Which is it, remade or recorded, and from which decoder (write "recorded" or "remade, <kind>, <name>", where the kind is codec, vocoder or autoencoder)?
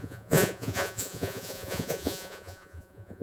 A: remade, vocoder, Vocos